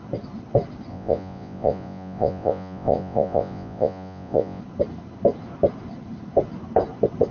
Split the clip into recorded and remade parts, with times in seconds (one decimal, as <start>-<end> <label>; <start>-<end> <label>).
0.0-0.9 recorded; 0.9-4.6 remade; 4.6-7.3 recorded